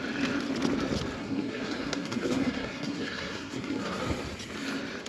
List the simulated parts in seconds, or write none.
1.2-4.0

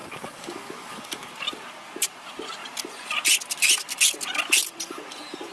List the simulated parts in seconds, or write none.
0.0-1.3

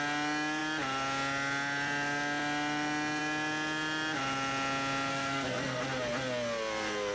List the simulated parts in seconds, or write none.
5.1-5.8

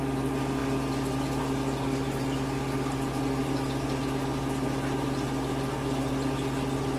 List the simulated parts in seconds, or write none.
none